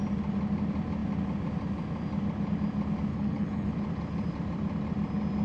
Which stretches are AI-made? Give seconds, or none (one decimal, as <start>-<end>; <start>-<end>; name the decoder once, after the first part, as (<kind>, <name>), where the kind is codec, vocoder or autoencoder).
3.1-3.7 (codec, HILCodec)